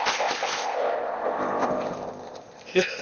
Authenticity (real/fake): fake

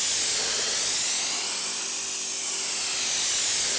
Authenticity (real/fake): real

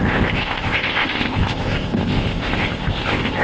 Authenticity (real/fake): fake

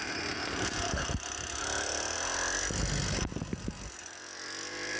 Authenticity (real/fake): real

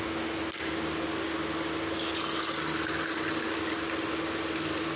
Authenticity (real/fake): real